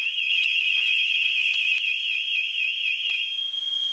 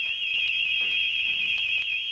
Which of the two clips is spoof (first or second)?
first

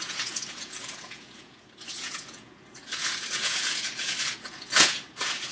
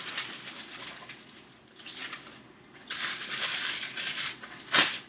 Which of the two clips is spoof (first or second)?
first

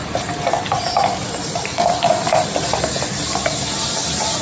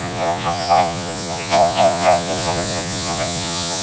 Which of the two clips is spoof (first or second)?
second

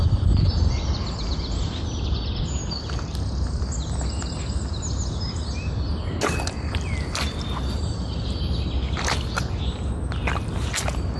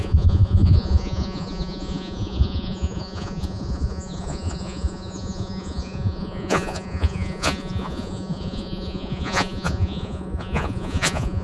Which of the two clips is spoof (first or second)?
second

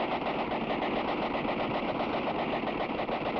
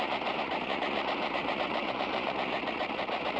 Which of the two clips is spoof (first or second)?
second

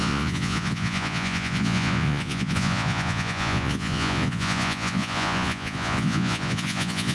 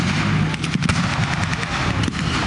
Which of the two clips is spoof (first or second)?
first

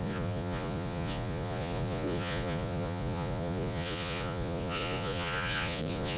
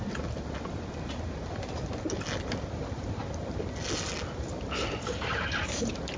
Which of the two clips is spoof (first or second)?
first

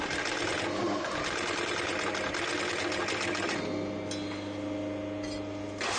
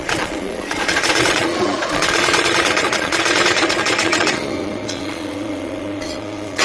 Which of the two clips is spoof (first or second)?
second